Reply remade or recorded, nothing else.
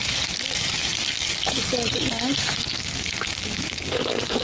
remade